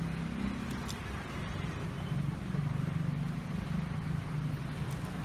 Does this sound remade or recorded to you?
recorded